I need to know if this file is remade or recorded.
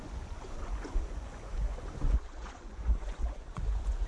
remade